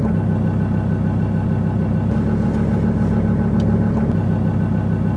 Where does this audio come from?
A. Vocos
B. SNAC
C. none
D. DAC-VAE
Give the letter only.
C